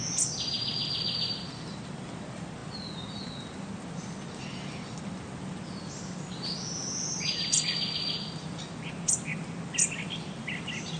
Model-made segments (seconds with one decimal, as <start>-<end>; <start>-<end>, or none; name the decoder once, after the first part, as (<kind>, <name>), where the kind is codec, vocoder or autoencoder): 6.8-7.3 (vocoder, BigVGAN v2)